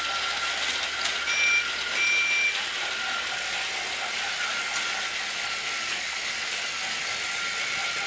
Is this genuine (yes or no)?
yes